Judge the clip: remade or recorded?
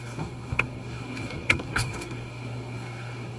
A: remade